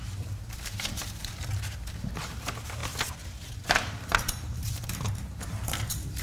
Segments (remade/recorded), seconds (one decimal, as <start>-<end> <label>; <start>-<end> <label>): 0.0-2.8 remade; 2.8-3.5 recorded; 3.5-6.2 remade